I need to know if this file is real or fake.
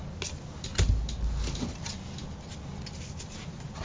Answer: real